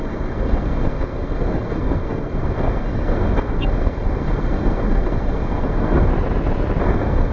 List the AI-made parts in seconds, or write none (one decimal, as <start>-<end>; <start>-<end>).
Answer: 0.0-6.1; 6.8-7.3